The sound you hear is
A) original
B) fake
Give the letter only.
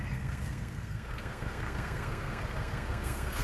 B